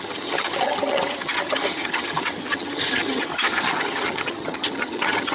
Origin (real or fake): fake